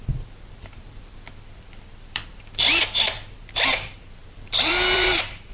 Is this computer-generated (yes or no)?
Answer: yes